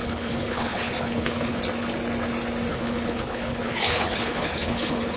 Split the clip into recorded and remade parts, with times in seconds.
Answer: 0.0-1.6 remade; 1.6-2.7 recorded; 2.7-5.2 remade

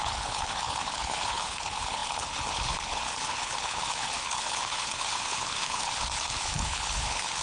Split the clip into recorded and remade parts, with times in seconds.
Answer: 0.0-7.4 remade

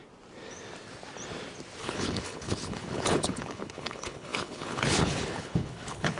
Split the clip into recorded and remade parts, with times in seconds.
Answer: 0.0-1.8 recorded; 1.8-6.2 remade

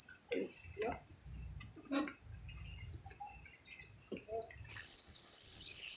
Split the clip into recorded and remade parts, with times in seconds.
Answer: 0.0-4.7 recorded; 4.7-6.0 remade

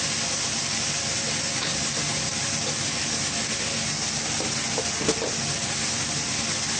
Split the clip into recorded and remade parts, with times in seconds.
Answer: 0.0-6.8 recorded

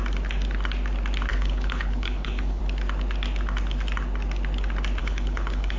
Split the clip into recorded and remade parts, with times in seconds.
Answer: 0.0-1.3 recorded; 1.3-2.6 remade; 2.6-5.0 recorded; 5.0-5.8 remade

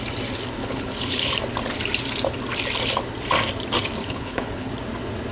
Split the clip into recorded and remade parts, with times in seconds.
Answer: 0.0-0.6 recorded; 0.6-1.3 remade; 1.3-4.0 recorded; 4.0-4.7 remade; 4.7-5.3 recorded